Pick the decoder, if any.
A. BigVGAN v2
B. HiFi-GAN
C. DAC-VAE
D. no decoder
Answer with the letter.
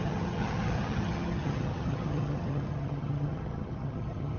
B